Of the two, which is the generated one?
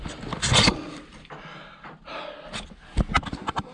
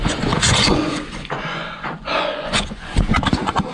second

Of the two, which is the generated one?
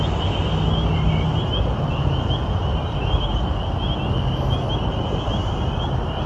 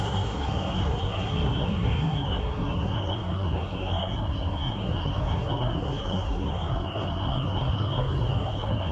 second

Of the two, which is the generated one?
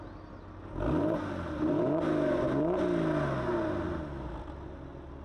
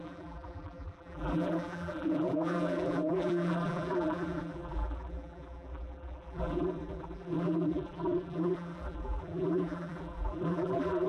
second